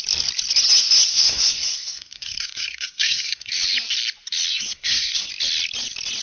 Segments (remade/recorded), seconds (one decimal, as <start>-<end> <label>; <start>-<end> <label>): 0.0-1.1 recorded; 1.1-3.5 remade; 3.5-4.5 recorded; 4.5-5.3 remade; 5.3-6.2 recorded